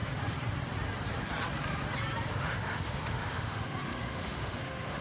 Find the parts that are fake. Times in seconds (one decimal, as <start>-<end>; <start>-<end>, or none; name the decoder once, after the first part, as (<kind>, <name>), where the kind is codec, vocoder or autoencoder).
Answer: 2.3-5.0 (autoencoder, DAC-VAE)